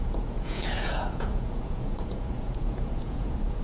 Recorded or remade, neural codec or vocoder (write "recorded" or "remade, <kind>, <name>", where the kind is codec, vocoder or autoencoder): remade, vocoder, Vocos